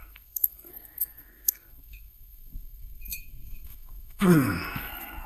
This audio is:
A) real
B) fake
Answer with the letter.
B